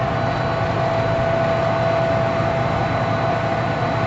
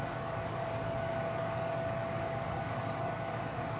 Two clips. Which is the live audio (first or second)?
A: first